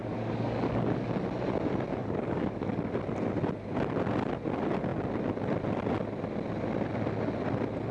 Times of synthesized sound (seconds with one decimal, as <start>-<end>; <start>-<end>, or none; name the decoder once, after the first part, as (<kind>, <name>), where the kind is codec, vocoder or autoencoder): 0.0-1.1 (codec, DAC); 2.0-2.9